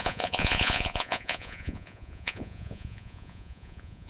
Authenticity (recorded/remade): remade